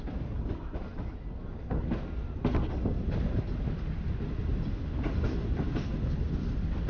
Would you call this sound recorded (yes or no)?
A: yes